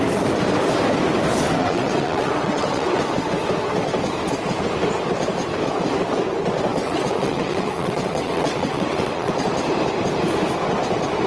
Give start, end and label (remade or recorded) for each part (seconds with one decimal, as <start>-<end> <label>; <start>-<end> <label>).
0.0-1.6 recorded; 1.6-3.0 remade; 3.0-6.7 recorded; 6.7-9.3 remade; 9.3-11.3 recorded